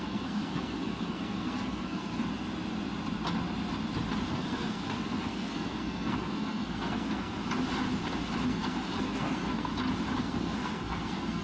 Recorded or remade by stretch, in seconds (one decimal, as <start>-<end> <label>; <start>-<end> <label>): 0.0-2.2 remade; 2.2-4.3 recorded; 4.3-7.4 remade; 7.4-8.5 recorded; 8.5-9.7 remade; 9.7-10.2 recorded; 10.2-11.4 remade